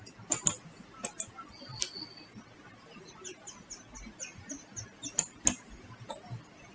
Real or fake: real